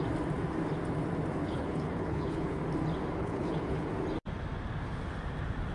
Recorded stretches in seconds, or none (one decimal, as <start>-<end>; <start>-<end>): 0.0-1.4; 2.6-3.2; 3.9-5.7